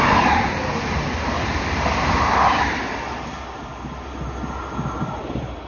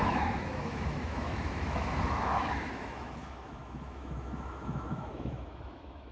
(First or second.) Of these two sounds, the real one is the first